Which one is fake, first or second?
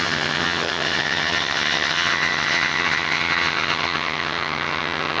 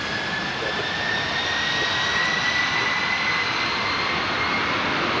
first